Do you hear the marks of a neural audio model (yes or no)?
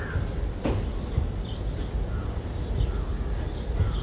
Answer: no